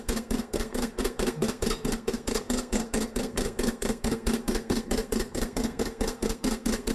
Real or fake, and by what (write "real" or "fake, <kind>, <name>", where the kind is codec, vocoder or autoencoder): fake, codec, SNAC